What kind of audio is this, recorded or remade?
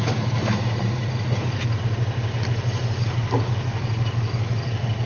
recorded